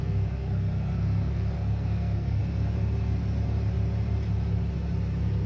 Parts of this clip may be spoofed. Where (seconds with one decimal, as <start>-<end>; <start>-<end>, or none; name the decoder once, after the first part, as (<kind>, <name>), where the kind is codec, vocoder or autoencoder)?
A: 0.0-2.4 (codec, SNAC)